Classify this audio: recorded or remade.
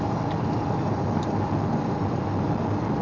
recorded